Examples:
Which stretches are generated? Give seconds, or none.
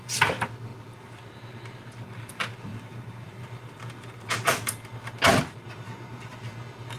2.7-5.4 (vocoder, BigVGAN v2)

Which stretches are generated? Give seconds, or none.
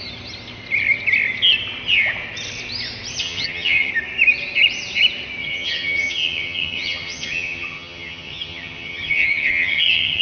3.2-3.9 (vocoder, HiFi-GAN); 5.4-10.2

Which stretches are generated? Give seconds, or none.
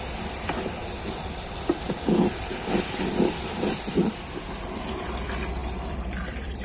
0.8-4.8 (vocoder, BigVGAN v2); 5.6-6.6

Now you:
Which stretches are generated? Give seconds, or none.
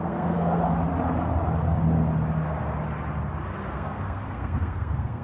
0.0-0.6 (codec, SNAC); 3.7-5.2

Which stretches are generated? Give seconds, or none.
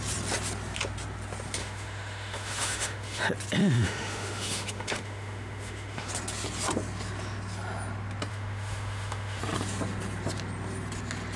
1.6-3.2 (autoencoder, DAC-VAE); 3.6-6.1; 8.3-9.4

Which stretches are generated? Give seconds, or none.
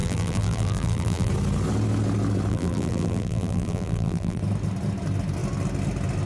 0.0-1.3 (vocoder, BigVGAN v2); 2.5-4.4